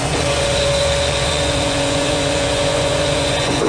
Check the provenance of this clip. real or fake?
fake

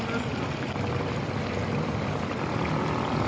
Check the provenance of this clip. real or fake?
real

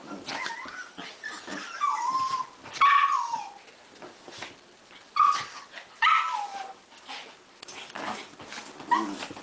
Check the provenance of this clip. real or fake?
real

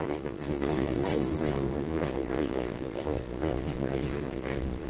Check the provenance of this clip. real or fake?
fake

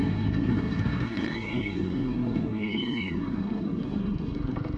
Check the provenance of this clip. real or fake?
fake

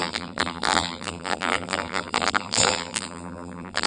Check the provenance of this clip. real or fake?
fake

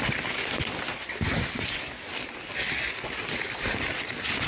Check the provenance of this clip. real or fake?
real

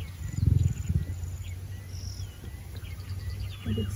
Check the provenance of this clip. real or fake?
real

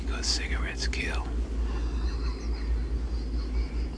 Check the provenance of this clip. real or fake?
real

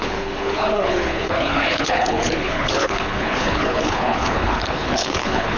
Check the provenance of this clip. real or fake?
fake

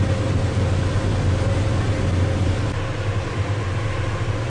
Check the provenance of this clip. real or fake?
real